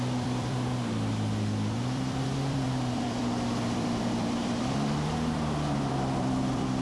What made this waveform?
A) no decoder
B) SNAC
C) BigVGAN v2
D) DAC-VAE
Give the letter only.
C